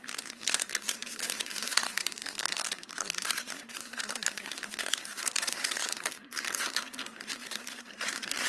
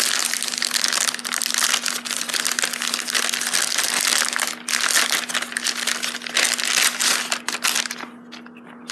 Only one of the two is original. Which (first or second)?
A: second